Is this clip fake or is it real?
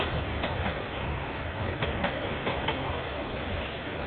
fake